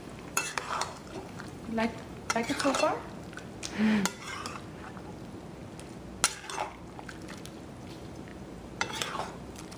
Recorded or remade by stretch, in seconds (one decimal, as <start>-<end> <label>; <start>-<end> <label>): 0.0-2.9 remade; 2.9-7.8 recorded; 7.8-9.8 remade